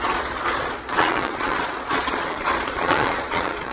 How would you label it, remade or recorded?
remade